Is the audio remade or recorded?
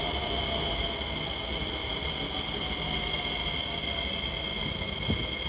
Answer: recorded